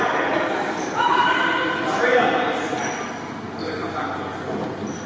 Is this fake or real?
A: real